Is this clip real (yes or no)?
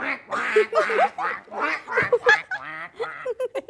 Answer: yes